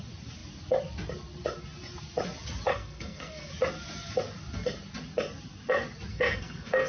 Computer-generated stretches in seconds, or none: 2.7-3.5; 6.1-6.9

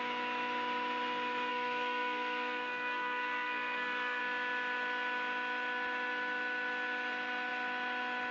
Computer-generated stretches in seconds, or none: 1.5-4.2

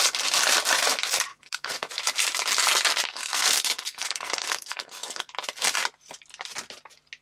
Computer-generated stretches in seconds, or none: 1.3-1.9; 3.1-5.3

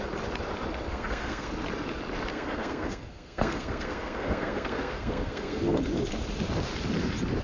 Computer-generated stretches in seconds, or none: 0.9-1.5; 2.3-5.8